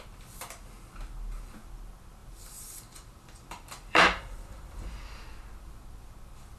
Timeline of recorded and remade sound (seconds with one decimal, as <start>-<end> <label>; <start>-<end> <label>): 0.0-2.2 recorded; 2.2-5.0 remade; 5.0-6.6 recorded

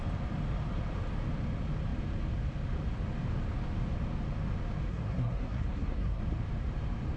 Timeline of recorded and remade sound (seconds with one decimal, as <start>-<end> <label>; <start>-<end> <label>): 0.0-4.9 recorded; 4.9-6.2 remade; 6.2-7.2 recorded

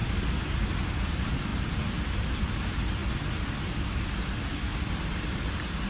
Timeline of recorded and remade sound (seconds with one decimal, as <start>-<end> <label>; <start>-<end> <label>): 0.0-5.9 recorded

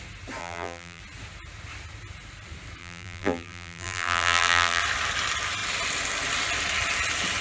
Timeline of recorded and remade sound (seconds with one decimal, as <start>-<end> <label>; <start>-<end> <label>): 0.0-0.4 recorded; 0.4-1.0 remade; 1.0-2.8 recorded; 2.8-4.8 remade; 4.8-7.4 recorded

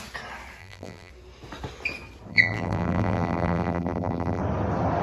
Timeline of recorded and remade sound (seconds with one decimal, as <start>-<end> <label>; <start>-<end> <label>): 0.0-0.6 recorded; 0.6-1.1 remade; 1.1-2.3 recorded; 2.3-4.4 remade; 4.4-5.0 recorded

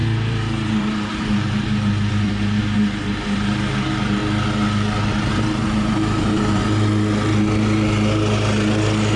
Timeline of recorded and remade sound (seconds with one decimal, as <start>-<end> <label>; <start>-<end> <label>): 0.0-4.2 remade; 4.2-5.3 recorded; 5.3-6.6 remade; 6.6-9.2 recorded